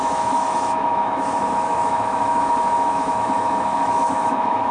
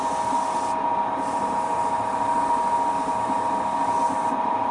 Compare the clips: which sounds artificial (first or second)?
first